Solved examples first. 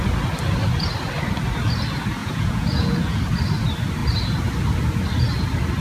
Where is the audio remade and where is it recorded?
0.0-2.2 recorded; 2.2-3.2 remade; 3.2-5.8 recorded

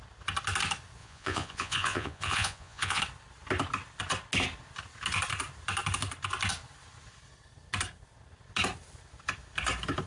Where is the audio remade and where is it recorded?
0.0-1.0 recorded; 1.0-3.0 remade; 3.0-10.1 recorded

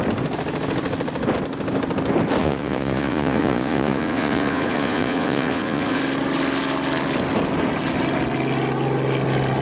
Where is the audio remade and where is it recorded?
0.0-2.4 recorded; 2.4-6.0 remade; 6.0-9.6 recorded

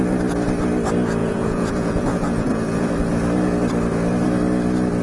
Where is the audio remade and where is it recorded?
0.0-1.2 recorded; 1.2-2.9 remade; 2.9-5.0 recorded

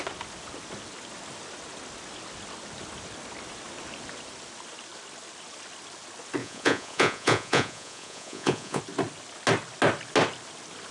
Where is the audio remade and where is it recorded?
0.0-6.4 recorded; 6.4-8.8 remade; 8.8-10.9 recorded

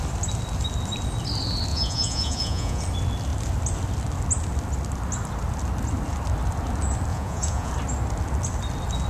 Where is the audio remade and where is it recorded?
0.0-1.7 recorded; 1.7-2.8 remade; 2.8-7.1 recorded; 7.1-7.7 remade; 7.7-9.1 recorded